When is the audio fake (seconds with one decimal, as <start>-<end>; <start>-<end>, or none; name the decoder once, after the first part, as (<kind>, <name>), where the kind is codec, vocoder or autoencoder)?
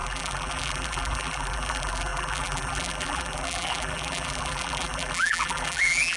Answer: 0.0-6.2 (vocoder, BigVGAN v2)